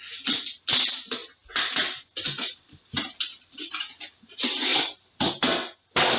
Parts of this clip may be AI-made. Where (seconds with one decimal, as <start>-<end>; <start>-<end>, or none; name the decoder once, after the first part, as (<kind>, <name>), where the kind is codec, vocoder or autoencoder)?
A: 1.2-3.7 (vocoder, BigVGAN v2); 4.7-5.3